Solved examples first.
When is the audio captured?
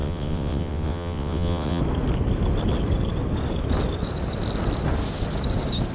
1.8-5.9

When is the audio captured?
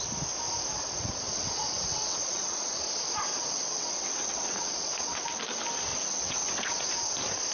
0.0-0.7; 2.8-3.3; 5.4-5.9; 6.9-7.5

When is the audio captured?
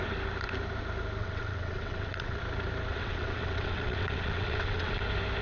0.0-1.2; 2.4-2.9; 5.0-5.4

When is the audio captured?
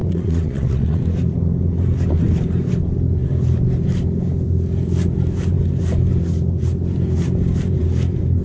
1.0-8.4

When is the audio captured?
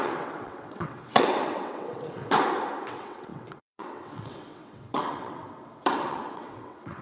2.2-2.9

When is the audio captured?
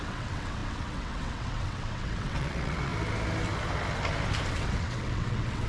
2.9-4.5